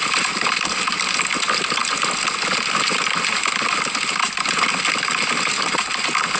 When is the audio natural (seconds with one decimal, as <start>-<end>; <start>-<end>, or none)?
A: 0.0-6.4